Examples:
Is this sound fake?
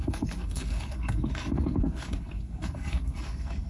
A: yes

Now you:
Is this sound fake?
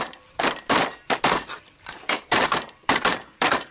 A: yes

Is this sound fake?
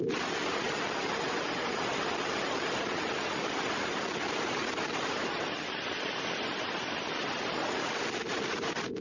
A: no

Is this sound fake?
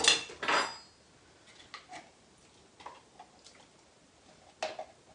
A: no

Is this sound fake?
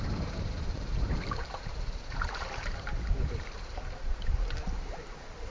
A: yes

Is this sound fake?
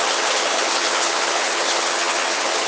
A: yes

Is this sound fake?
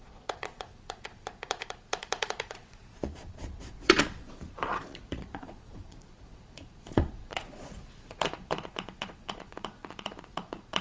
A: yes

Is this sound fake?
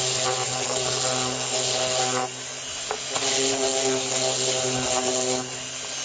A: no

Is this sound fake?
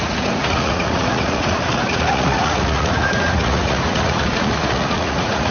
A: yes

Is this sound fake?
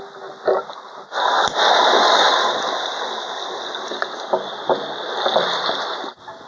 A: no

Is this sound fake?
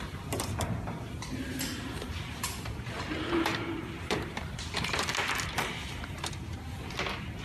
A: yes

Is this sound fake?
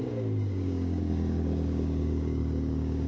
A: yes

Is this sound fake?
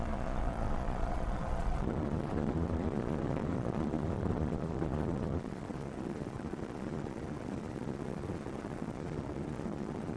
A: yes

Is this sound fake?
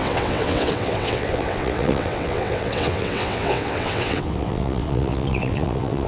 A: yes